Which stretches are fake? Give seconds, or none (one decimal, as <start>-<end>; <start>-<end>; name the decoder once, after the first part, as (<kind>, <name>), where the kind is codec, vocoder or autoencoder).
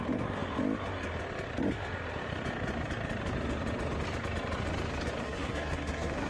5.2-6.3 (codec, SNAC)